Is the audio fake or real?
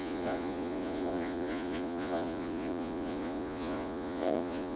fake